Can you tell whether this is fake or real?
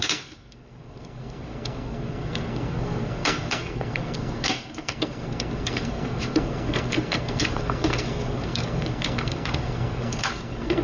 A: fake